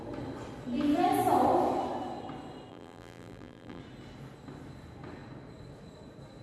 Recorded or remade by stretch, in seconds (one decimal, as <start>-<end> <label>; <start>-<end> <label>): 0.0-2.7 recorded; 2.7-3.8 remade; 3.8-6.4 recorded